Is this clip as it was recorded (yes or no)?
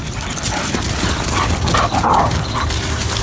yes